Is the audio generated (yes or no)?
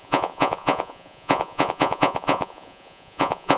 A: yes